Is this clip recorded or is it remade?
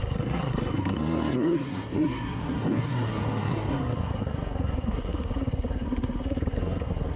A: remade